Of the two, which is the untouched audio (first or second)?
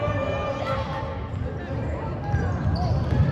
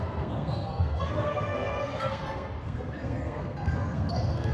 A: first